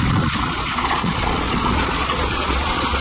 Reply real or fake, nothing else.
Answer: fake